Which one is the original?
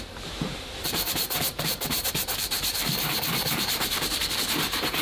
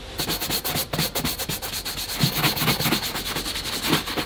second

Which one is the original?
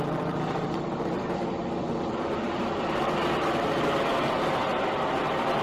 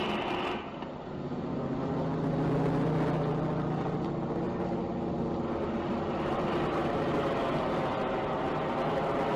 second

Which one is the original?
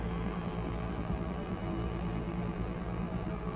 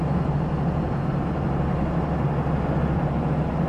second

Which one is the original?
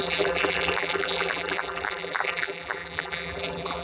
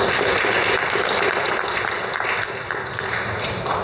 second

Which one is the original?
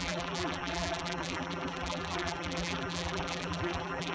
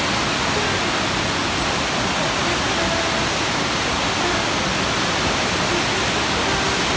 second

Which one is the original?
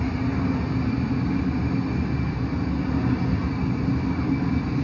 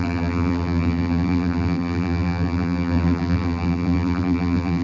first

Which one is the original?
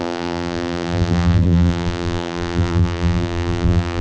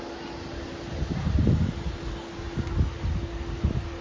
second